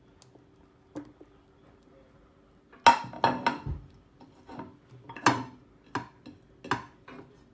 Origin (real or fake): real